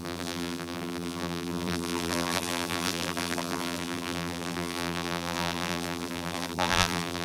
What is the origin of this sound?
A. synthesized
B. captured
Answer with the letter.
A